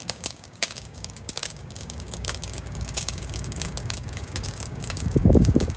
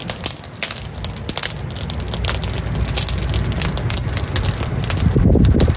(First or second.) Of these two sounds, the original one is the second